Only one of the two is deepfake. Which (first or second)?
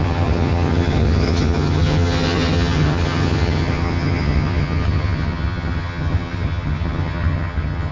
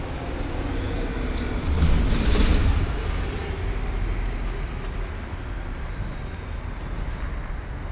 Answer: first